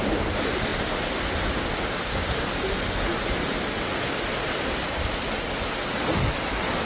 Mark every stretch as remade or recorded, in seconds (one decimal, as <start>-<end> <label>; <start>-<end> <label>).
0.0-6.9 recorded